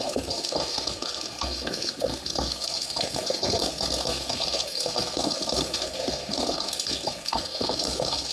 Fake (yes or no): yes